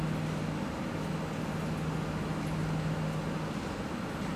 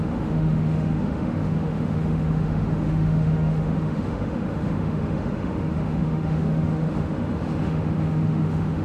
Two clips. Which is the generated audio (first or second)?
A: second